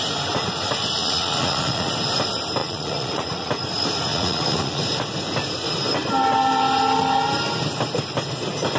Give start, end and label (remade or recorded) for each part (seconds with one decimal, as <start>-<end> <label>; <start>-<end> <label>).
0.0-1.0 recorded; 1.0-1.9 remade; 1.9-2.6 recorded; 2.6-3.5 remade; 3.5-4.1 recorded; 4.1-4.8 remade; 4.8-8.8 recorded